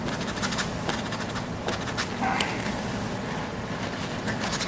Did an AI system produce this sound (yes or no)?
no